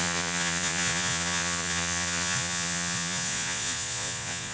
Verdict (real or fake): fake